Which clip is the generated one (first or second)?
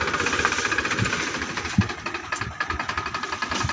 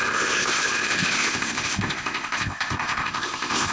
second